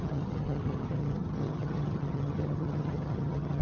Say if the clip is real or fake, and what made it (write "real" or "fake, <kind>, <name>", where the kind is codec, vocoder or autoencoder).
fake, vocoder, HiFi-GAN